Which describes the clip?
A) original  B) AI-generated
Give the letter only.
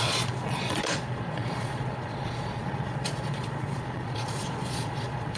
B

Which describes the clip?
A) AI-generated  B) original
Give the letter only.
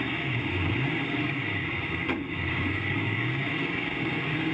A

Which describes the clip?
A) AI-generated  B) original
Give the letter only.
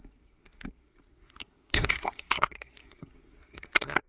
A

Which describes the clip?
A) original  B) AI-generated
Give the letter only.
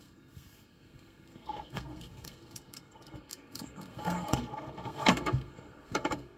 B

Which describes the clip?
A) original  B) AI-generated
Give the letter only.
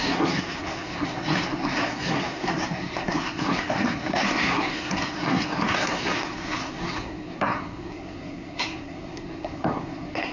B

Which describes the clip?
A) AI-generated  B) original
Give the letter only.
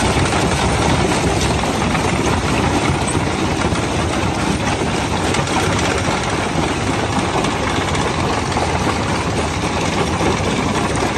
B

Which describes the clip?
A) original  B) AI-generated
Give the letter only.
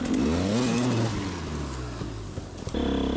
A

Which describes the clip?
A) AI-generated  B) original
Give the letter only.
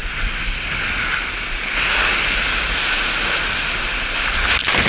B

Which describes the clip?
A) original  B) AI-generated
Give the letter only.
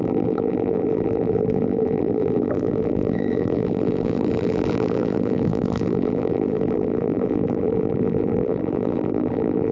B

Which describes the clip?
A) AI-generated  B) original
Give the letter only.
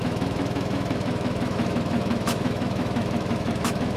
A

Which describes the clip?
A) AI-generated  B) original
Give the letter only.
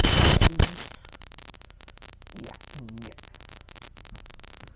A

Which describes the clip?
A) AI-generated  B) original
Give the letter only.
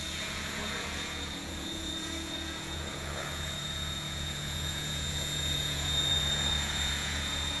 A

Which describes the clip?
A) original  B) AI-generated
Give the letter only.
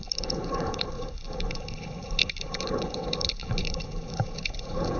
B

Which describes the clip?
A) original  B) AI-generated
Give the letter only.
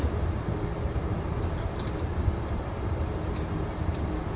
A